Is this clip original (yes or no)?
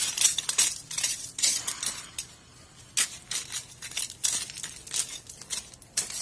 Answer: yes